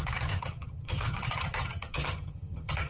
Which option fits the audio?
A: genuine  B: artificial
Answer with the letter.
B